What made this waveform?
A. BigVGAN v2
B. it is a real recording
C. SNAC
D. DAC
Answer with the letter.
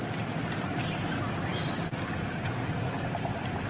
B